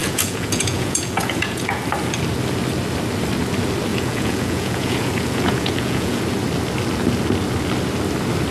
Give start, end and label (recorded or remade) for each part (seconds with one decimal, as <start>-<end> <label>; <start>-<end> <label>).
0.0-1.8 remade; 1.8-3.9 recorded; 3.9-6.2 remade; 6.2-8.5 recorded